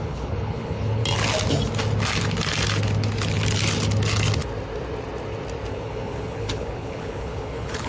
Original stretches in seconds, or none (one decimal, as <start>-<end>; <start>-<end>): 1.0-5.7